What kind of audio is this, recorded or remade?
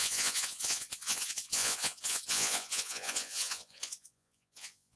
remade